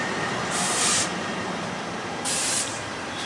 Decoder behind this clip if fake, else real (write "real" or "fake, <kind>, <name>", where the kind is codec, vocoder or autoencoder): fake, vocoder, BigVGAN v2